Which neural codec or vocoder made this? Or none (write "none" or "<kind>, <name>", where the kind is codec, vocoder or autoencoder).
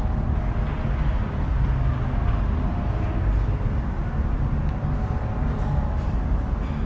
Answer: none